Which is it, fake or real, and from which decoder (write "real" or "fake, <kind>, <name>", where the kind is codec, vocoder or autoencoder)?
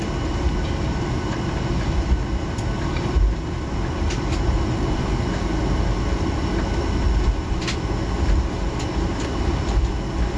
real